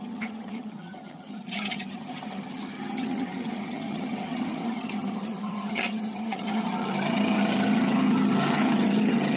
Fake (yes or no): yes